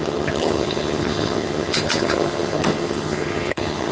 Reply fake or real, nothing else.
fake